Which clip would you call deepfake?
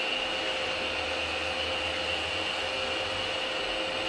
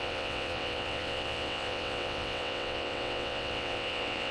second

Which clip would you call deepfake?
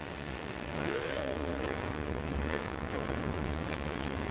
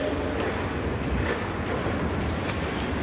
first